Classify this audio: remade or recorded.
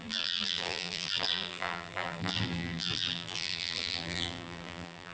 remade